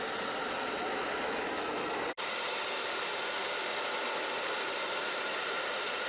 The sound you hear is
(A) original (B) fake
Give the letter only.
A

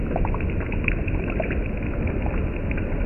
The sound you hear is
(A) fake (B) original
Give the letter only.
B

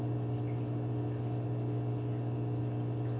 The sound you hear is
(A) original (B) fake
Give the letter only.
A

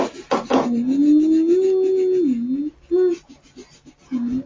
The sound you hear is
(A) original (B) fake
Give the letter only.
A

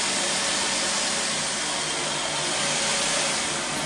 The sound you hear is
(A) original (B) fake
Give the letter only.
A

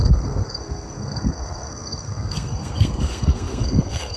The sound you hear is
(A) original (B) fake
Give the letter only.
B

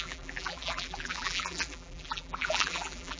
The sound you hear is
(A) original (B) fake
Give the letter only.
B